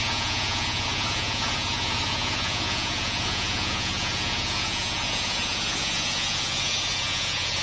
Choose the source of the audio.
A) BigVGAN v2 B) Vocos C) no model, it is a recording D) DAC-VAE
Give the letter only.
B